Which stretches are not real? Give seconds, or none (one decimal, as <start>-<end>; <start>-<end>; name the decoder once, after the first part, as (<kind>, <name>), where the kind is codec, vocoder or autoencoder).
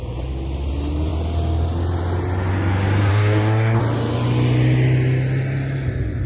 3.1-3.8 (codec, SNAC)